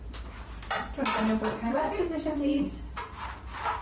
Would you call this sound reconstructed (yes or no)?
no